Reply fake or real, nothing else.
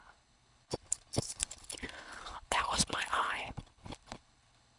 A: fake